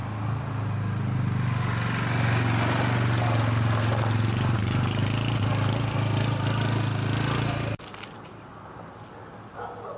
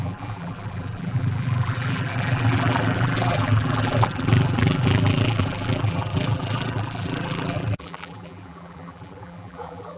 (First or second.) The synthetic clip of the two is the second